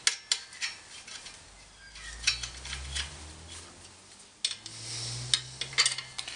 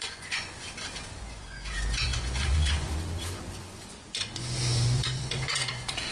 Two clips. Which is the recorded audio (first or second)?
first